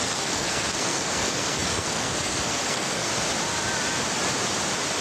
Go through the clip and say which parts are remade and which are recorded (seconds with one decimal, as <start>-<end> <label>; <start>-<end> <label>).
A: 0.0-3.1 remade; 3.1-5.0 recorded